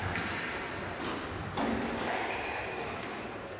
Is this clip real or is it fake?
real